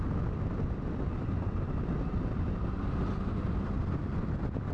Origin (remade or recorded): recorded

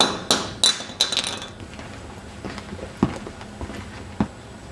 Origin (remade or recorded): recorded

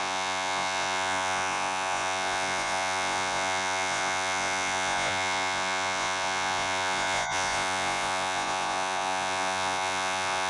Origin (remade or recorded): remade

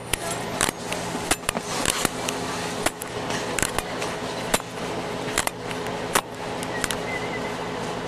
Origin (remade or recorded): recorded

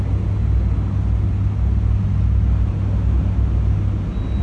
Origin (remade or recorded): recorded